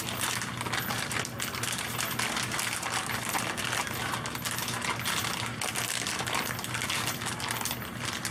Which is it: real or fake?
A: real